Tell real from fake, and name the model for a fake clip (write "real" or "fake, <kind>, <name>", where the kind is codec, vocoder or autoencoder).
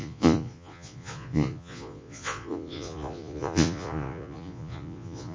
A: fake, vocoder, Vocos